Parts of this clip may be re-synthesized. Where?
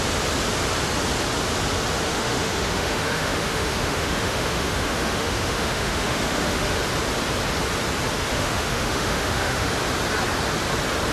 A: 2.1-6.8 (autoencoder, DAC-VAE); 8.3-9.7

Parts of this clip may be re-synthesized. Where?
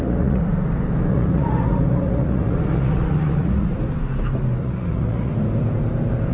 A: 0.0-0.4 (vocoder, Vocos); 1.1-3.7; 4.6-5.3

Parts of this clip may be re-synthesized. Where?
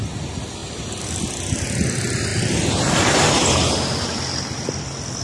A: 0.6-1.3 (vocoder, BigVGAN v2); 2.3-4.8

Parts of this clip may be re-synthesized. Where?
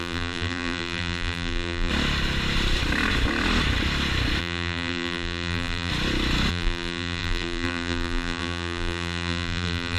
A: 0.0-1.9 (vocoder, BigVGAN v2); 4.4-5.9; 6.5-10.0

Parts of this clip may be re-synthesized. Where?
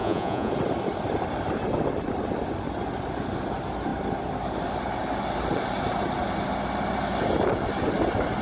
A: 0.0-0.5 (vocoder, Vocos)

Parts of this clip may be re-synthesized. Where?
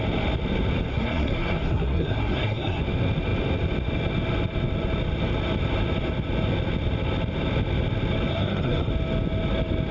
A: 0.9-2.8 (codec, SNAC); 8.3-8.9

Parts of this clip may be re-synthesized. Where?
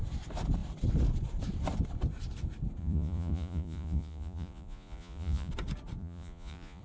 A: 2.8-5.5 (vocoder, Vocos); 6.0-6.8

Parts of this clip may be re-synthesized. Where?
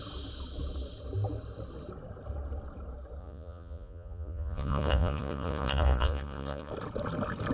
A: 3.2-6.7 (vocoder, Vocos)